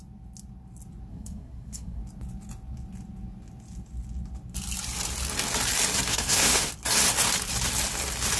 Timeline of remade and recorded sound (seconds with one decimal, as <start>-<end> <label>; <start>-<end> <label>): 0.0-1.1 recorded; 1.1-2.0 remade; 2.0-6.1 recorded; 6.1-6.7 remade; 6.7-8.4 recorded